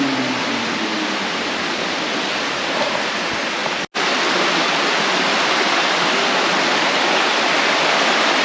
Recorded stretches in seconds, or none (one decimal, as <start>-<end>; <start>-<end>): 0.0-8.4